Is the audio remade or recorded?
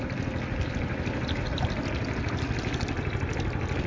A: recorded